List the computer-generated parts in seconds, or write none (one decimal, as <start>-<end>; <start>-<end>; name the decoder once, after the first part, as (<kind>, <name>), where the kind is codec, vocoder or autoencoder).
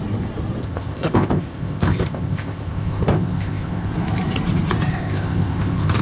0.6-3.9 (codec, ZipCodec); 4.9-6.0